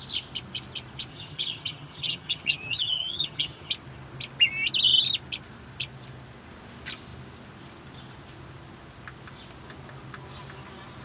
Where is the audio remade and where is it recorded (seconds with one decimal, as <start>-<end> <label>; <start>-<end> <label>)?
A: 0.0-1.1 recorded; 1.1-3.7 remade; 3.7-11.0 recorded